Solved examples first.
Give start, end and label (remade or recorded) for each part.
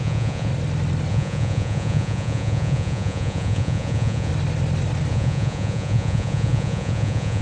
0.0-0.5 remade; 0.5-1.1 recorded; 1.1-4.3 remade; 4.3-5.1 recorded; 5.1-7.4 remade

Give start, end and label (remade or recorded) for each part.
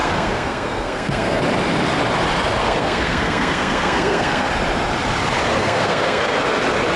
0.0-1.4 remade; 1.4-2.6 recorded; 2.6-4.5 remade; 4.5-5.6 recorded; 5.6-6.2 remade; 6.2-7.0 recorded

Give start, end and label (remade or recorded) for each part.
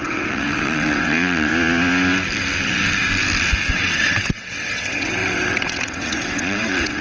0.0-1.5 remade; 1.5-3.7 recorded; 3.7-7.0 remade